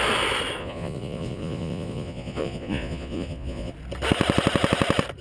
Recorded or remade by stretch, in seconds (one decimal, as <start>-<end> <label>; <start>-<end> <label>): 0.0-0.6 recorded; 0.6-3.7 remade; 3.7-5.2 recorded